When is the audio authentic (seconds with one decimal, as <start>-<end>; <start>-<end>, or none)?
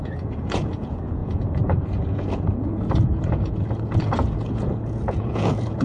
none